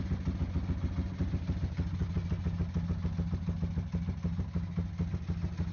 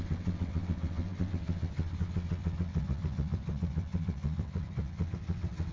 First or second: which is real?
first